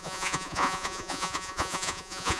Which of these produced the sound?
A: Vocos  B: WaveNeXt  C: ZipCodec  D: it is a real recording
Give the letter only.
A